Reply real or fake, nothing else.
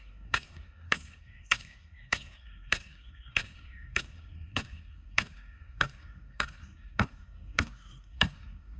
fake